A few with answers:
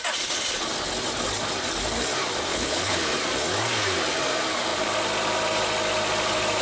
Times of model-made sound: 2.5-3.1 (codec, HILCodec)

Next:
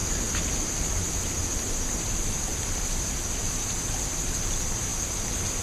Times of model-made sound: 0.9-4.9 (vocoder, BigVGAN v2)

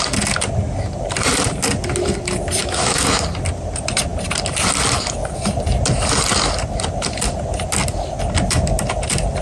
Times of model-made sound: 2.6-3.2 (autoencoder, DAC-VAE)

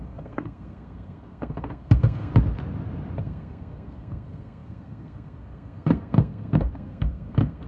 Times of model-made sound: 0.0-2.3 (codec, SNAC); 3.2-7.7

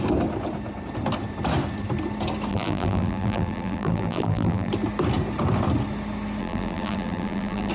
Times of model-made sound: 2.5-4.7 (vocoder, BigVGAN v2); 6.4-7.7